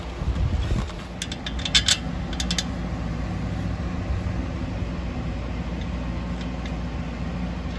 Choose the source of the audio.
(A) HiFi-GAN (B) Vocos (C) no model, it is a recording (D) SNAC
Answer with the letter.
C